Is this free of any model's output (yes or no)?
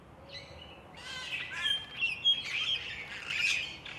yes